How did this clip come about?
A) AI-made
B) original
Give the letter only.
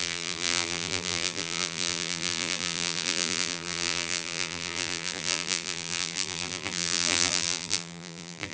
A